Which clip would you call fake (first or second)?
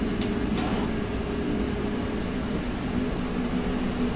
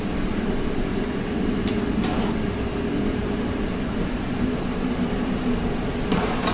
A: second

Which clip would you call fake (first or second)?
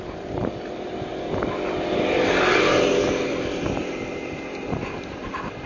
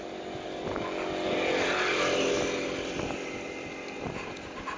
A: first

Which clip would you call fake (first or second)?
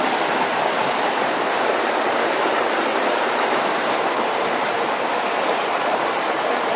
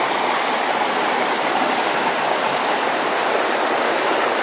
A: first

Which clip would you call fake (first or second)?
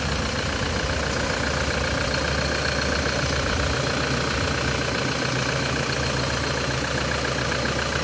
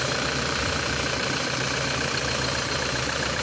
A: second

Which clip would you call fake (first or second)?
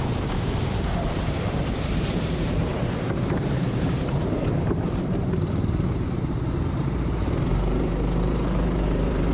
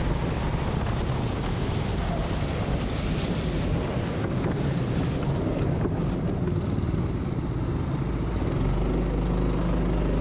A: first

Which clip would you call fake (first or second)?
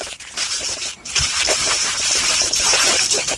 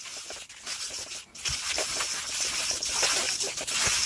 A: first